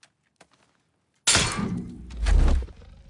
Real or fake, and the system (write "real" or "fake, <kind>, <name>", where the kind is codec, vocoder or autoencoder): real